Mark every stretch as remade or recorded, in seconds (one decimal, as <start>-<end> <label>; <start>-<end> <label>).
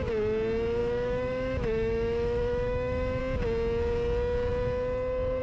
0.0-0.8 recorded; 0.8-3.2 remade; 3.2-5.4 recorded